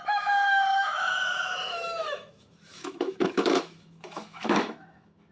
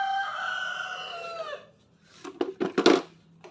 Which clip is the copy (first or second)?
first